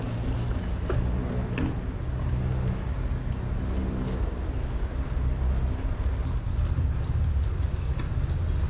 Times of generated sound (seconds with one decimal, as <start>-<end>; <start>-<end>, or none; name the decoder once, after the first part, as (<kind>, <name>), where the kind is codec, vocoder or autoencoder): none